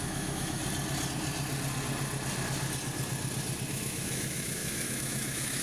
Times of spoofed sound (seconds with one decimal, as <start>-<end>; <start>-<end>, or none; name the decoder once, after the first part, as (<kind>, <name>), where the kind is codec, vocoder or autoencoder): 0.0-0.6 (autoencoder, DAC-VAE); 3.7-5.6